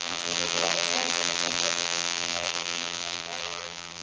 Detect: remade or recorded remade